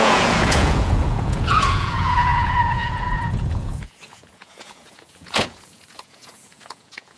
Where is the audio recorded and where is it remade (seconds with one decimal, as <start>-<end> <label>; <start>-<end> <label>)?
0.0-7.2 remade